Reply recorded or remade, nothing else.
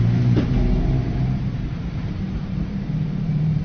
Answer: remade